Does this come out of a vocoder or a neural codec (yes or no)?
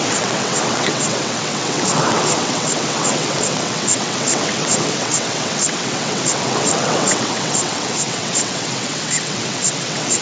yes